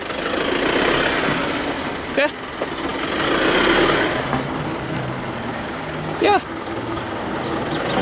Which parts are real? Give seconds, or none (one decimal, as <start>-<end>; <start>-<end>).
0.0-5.5; 7.0-8.0